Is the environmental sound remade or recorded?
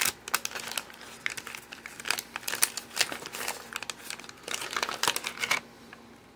recorded